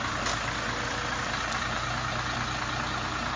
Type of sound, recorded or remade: recorded